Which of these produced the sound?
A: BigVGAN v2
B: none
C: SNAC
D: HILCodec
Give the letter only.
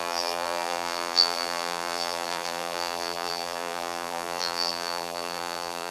A